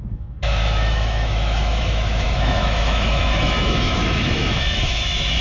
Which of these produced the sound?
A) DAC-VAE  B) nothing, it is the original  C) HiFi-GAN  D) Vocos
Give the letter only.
A